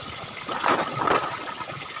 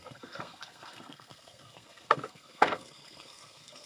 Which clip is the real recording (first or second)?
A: first